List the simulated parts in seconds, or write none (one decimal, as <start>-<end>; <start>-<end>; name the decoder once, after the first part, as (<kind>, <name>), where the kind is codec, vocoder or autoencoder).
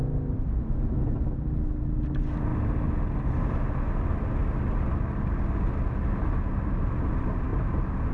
none